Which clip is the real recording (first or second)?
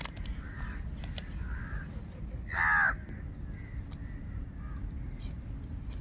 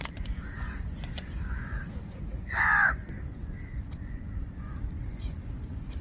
first